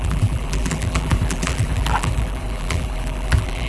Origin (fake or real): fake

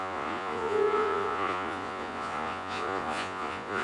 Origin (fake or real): fake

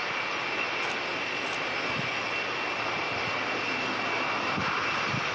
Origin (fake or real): real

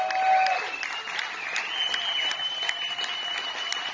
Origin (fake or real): real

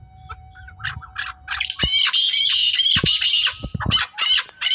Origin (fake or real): real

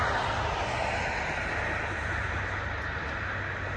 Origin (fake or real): real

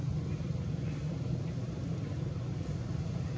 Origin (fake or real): real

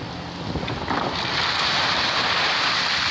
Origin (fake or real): real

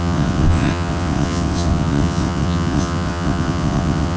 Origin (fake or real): fake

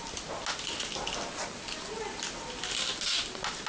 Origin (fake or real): real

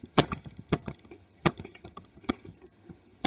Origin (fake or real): fake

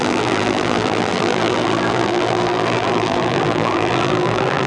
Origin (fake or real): fake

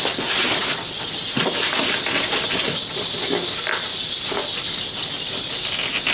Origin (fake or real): real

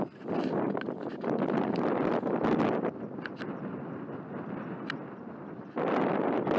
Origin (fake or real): real